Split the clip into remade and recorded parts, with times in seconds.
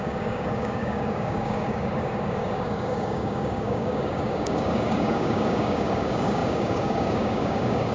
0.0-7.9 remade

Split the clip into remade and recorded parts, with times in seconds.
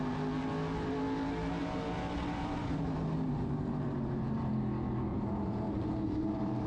0.0-1.6 recorded; 1.6-4.6 remade; 4.6-5.1 recorded; 5.1-6.7 remade